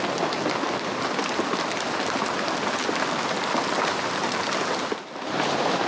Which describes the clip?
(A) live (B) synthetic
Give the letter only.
A